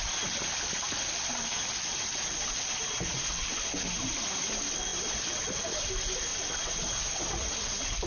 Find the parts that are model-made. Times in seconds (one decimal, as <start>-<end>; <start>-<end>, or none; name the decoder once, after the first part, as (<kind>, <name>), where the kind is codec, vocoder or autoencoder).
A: 4.9-5.7 (vocoder, BigVGAN v2); 6.3-7.2